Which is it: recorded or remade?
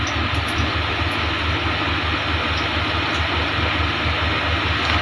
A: recorded